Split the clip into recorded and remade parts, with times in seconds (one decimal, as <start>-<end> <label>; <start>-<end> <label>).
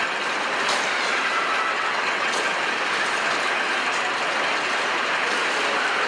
0.0-1.7 recorded; 1.7-2.4 remade; 2.4-6.1 recorded